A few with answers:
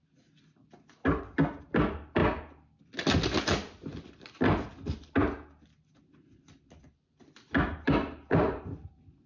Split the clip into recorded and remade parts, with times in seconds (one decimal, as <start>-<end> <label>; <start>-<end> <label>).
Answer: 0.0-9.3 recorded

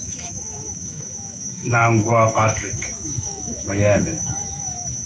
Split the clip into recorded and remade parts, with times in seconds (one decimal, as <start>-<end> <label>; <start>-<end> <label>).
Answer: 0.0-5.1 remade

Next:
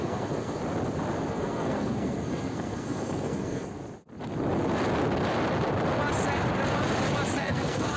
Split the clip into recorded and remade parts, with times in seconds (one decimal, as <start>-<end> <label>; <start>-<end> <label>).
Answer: 0.0-0.6 remade; 0.6-1.3 recorded; 1.3-3.8 remade; 3.8-7.4 recorded; 7.4-8.0 remade

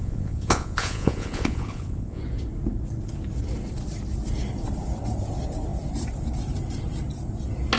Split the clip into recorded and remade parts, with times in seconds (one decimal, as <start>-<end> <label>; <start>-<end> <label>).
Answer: 0.0-2.2 remade; 2.2-7.8 recorded